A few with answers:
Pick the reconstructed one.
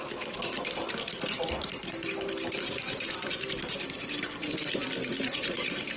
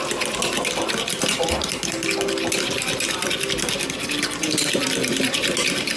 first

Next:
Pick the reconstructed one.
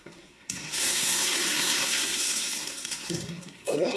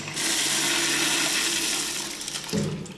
first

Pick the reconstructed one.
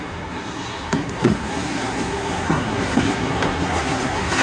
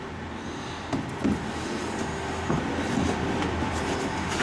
first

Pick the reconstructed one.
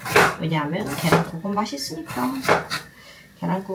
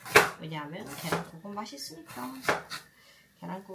first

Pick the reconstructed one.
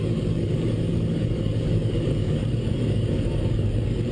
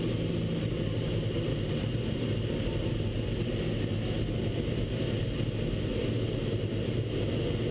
first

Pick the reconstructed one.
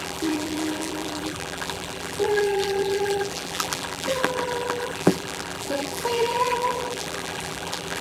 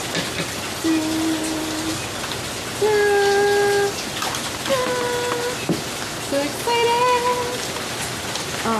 first